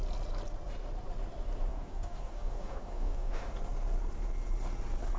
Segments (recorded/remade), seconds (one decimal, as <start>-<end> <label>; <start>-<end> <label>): 0.0-1.7 recorded; 1.7-3.5 remade; 3.5-5.2 recorded